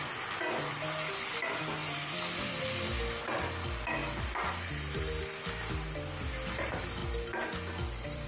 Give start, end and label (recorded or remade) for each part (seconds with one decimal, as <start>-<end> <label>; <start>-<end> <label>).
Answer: 0.0-4.0 recorded; 4.0-5.6 remade; 5.6-7.0 recorded; 7.0-8.3 remade